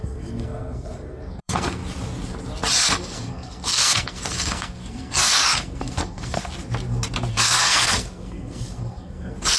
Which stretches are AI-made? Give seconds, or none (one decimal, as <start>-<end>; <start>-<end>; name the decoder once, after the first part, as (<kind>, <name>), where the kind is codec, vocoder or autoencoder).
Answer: 0.0-1.8 (codec, SNAC); 2.8-6.4; 7.3-9.6